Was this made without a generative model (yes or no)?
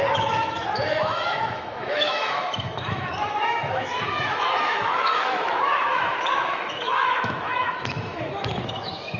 no